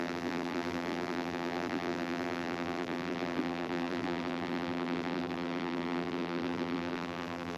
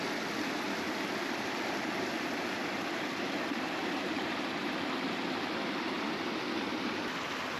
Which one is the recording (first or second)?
second